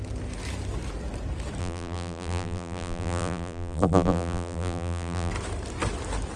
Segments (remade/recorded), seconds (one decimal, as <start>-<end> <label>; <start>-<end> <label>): 0.0-1.6 recorded; 1.6-5.3 remade; 5.3-6.4 recorded